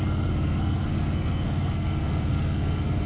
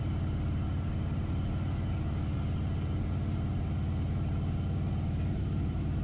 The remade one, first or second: first